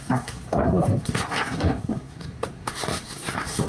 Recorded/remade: remade